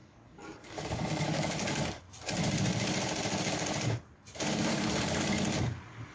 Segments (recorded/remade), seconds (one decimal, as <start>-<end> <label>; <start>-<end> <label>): 0.0-2.0 remade; 2.0-4.7 recorded; 4.7-5.3 remade; 5.3-6.1 recorded